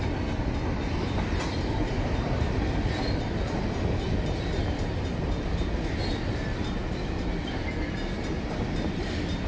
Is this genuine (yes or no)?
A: yes